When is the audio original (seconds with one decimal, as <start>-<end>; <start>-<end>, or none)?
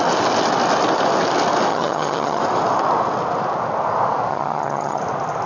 0.0-1.7; 2.4-4.3; 5.0-5.5